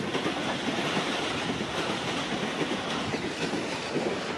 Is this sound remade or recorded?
recorded